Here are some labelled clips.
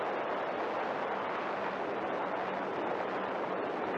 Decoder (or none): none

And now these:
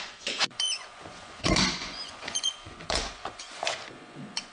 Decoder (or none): vocoder, Vocos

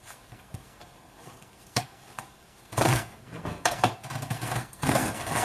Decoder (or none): codec, SNAC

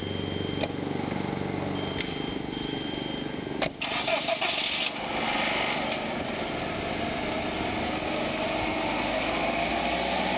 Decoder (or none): none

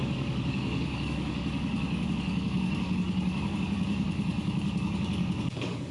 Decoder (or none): codec, DAC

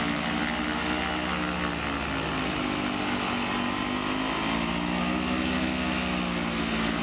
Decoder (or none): none